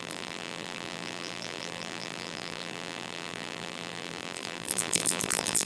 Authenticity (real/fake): fake